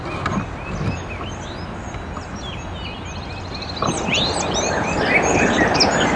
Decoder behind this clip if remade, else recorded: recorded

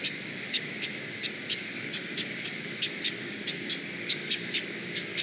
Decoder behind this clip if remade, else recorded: remade, codec, DAC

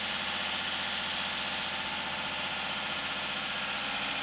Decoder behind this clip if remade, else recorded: recorded